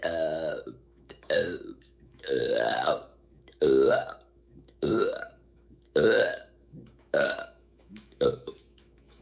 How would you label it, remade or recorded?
remade